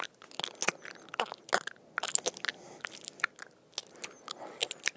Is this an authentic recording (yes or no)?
yes